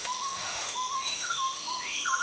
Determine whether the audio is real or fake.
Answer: fake